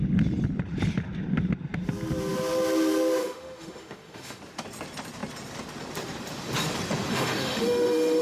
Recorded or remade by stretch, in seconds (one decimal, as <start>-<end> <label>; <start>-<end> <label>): 0.0-3.2 recorded; 3.2-4.4 remade; 4.4-7.1 recorded; 7.1-8.2 remade